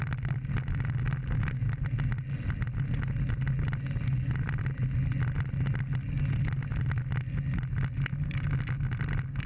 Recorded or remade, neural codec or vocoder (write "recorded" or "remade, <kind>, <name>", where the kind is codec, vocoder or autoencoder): recorded